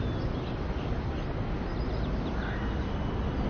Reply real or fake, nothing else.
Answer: real